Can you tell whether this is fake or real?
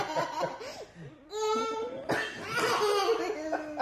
real